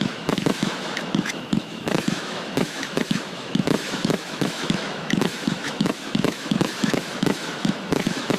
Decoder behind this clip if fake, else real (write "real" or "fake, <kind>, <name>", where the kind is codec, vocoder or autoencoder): fake, autoencoder, DAC-VAE